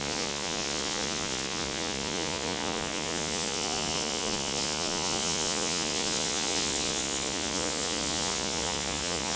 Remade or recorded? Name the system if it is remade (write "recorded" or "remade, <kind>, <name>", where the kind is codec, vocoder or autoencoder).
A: remade, vocoder, Vocos